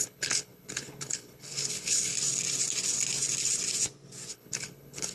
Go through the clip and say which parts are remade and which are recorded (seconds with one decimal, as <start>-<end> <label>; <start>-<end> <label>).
0.0-2.1 remade; 2.1-4.3 recorded; 4.3-5.1 remade